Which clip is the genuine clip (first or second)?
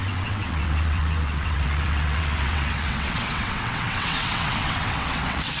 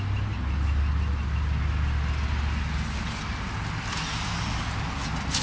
second